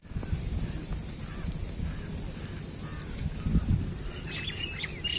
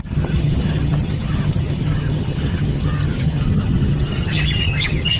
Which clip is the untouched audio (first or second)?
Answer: first